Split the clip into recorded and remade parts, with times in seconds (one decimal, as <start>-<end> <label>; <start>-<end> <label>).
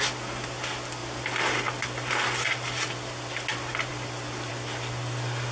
0.0-5.5 recorded